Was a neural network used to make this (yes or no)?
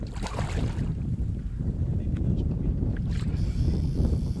yes